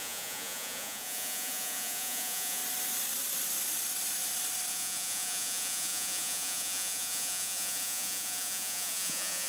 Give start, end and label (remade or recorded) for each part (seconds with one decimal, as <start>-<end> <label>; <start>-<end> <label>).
0.0-2.6 remade; 2.6-4.7 recorded; 4.7-9.5 remade